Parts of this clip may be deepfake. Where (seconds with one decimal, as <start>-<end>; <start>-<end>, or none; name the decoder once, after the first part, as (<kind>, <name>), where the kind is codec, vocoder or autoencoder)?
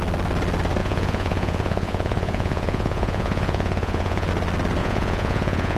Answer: 0.8-4.3 (vocoder, Vocos); 4.8-5.8